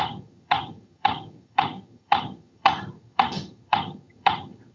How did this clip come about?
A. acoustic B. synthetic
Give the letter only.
B